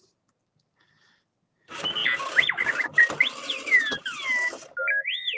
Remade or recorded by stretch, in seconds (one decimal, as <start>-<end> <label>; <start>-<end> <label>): 0.0-5.4 recorded